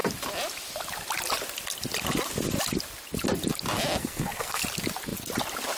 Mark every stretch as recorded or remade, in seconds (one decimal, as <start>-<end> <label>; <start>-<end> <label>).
0.0-4.0 recorded; 4.0-4.6 remade; 4.6-5.8 recorded